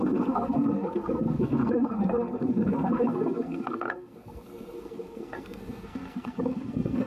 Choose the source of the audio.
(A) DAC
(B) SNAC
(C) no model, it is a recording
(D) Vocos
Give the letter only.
B